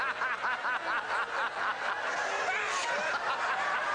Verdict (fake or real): real